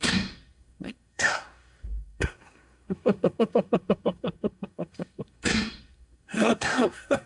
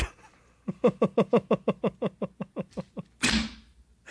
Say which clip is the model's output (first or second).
first